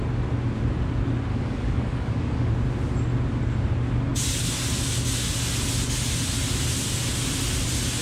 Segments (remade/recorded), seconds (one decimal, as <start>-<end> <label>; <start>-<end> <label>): 0.0-1.3 recorded; 1.3-2.5 remade; 2.5-8.0 recorded